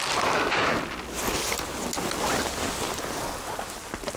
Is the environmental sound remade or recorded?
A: recorded